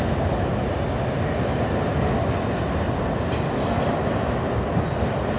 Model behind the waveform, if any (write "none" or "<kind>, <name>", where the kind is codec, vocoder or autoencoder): none